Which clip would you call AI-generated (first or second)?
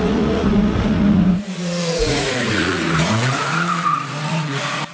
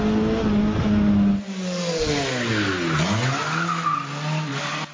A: first